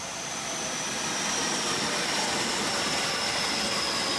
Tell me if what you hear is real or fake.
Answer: real